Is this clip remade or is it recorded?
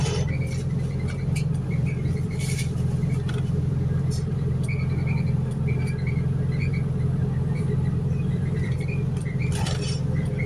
remade